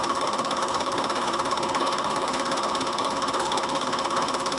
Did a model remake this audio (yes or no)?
yes